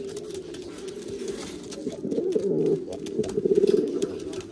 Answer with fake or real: real